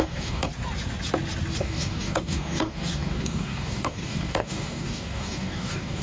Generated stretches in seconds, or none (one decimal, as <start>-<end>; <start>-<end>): 0.0-0.5; 1.6-6.0